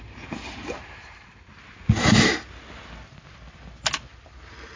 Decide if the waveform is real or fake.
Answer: real